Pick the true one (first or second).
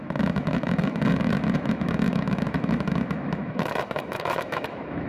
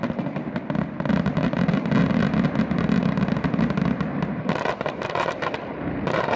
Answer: second